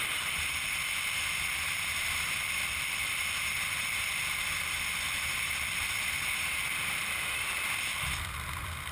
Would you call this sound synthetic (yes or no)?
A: no